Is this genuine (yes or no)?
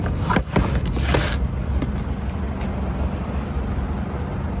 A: yes